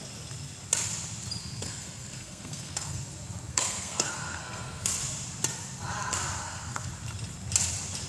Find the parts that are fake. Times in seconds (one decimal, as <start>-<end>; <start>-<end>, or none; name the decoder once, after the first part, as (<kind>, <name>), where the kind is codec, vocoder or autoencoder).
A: 1.4-3.0 (codec, SNAC); 3.5-4.9; 6.4-6.9